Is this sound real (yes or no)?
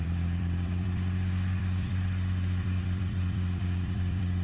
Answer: no